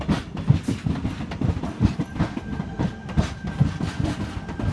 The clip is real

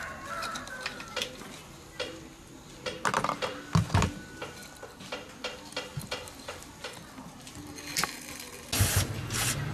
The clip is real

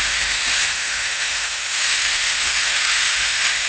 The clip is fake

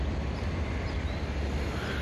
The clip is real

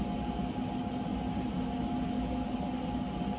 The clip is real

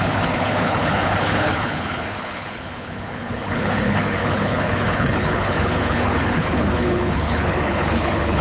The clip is fake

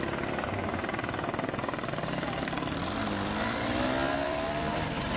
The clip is fake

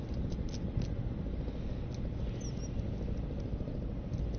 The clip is real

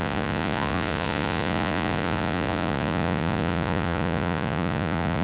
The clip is fake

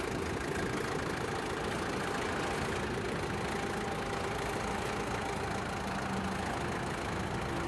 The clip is real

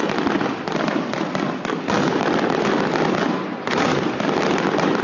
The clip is fake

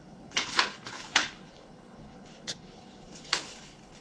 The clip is fake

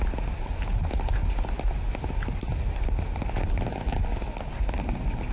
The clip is real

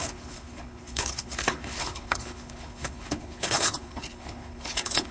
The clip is fake